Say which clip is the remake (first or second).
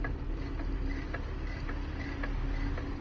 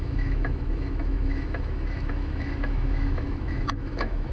second